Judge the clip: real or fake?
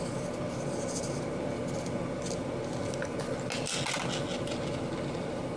real